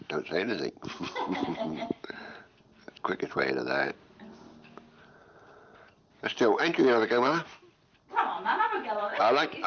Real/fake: real